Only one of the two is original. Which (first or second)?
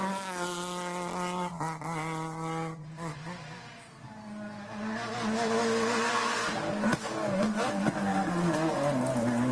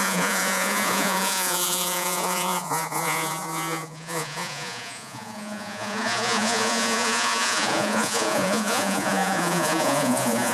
first